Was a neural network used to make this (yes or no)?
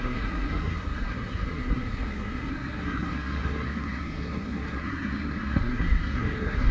yes